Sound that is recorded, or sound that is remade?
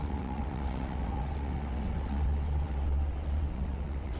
remade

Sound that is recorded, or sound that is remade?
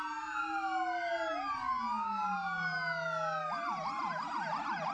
recorded